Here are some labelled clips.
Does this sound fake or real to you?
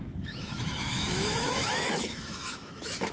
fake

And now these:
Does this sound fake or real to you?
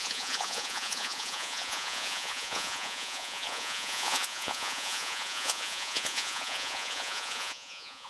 fake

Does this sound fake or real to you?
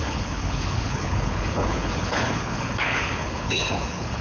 fake